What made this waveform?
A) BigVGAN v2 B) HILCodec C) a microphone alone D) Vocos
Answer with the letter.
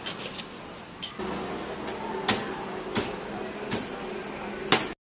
C